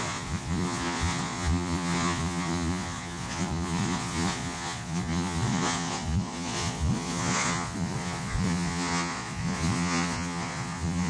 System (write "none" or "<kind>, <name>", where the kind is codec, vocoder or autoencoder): vocoder, Vocos